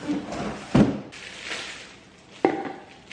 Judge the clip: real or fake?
real